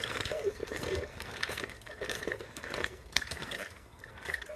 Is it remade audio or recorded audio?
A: remade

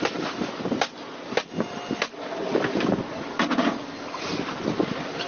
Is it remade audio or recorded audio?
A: recorded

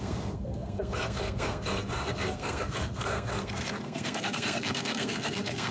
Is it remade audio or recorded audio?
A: remade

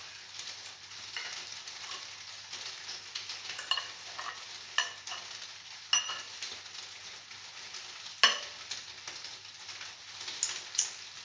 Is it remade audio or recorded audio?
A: recorded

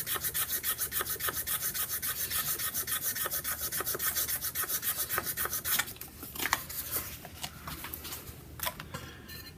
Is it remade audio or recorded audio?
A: recorded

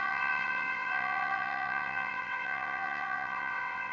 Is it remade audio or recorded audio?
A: remade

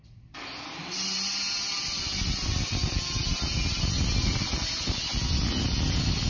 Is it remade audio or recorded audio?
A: recorded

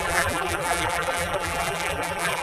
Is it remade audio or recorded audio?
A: remade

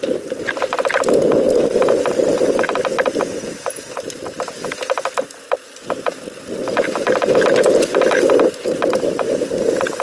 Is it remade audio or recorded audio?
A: recorded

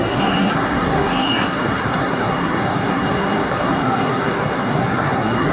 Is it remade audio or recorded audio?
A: remade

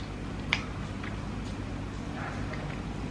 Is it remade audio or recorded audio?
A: recorded